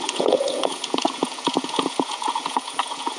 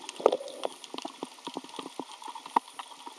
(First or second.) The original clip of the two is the second